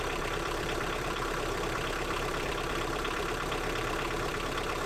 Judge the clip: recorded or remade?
remade